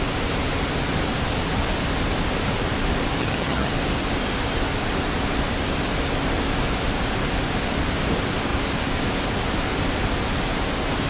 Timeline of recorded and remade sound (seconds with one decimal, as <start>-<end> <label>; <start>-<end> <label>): 0.0-3.2 recorded; 3.2-3.7 remade; 3.7-11.1 recorded